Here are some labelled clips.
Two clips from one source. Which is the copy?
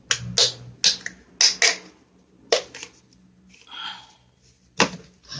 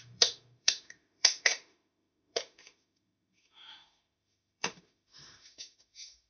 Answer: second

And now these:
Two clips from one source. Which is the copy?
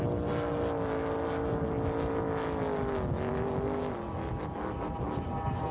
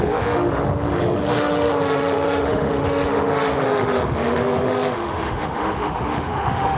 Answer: second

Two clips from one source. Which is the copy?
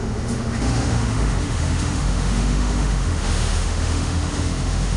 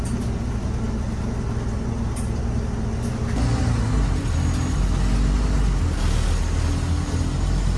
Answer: first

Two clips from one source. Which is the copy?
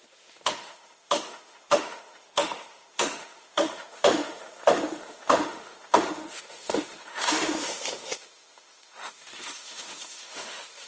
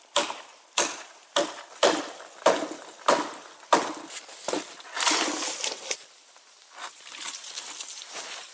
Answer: first